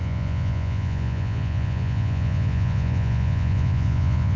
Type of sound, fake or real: fake